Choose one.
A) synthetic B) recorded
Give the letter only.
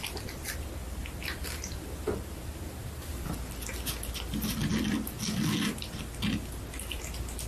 B